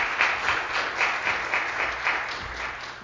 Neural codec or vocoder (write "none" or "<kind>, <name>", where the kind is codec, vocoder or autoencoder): none